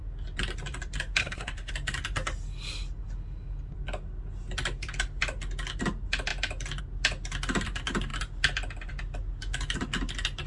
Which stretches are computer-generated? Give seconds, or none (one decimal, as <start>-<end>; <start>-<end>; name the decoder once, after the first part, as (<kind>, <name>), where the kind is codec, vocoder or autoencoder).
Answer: 1.2-1.7 (codec, SNAC)